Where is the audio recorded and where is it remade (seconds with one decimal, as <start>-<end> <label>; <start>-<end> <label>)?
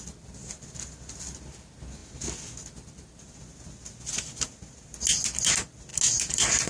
0.0-6.7 recorded